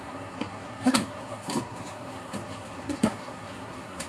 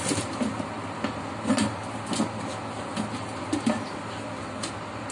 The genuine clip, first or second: second